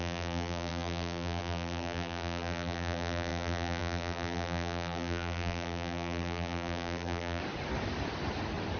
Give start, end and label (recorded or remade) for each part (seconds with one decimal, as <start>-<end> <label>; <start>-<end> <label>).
0.0-7.4 remade; 7.4-8.8 recorded

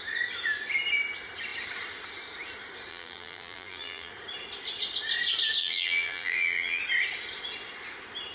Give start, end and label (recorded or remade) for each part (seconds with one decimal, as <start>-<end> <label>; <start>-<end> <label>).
0.0-2.9 recorded; 2.9-4.1 remade; 4.1-5.6 recorded; 5.6-6.8 remade; 6.8-8.3 recorded